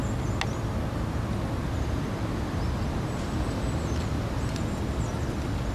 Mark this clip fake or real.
real